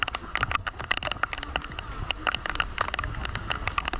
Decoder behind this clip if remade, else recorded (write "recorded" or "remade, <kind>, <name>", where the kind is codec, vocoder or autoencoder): recorded